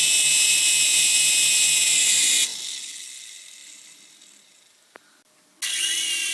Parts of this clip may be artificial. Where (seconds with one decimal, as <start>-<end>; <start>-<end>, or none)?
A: none

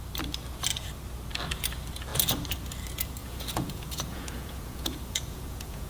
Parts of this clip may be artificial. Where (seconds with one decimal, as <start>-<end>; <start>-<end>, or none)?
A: 3.2-5.9